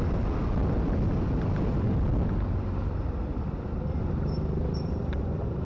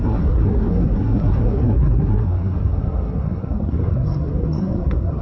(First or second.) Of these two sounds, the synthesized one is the second